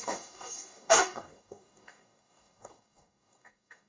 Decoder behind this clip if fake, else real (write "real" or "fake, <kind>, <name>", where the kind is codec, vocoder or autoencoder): fake, codec, DAC